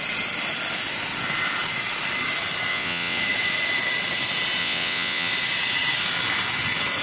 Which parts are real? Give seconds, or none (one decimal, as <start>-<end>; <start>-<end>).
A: 0.0-2.7; 3.2-4.6; 5.3-7.0